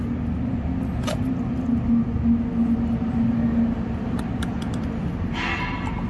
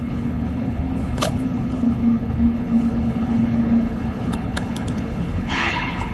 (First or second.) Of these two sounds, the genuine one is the first